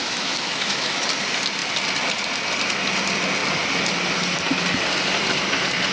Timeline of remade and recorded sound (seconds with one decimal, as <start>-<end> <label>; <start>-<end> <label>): 0.0-1.0 remade; 1.0-5.9 recorded